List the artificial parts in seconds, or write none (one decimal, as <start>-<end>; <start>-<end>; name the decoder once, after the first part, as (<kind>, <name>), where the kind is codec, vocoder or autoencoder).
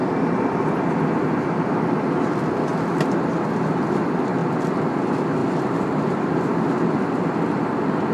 0.0-0.9 (vocoder, BigVGAN v2); 5.4-6.1